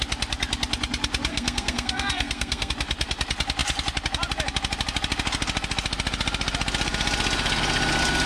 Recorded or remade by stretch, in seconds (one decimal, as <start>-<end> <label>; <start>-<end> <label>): 0.0-1.3 recorded; 1.3-2.7 remade; 2.7-8.3 recorded